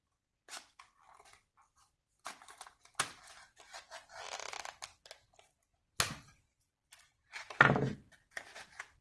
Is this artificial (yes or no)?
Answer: no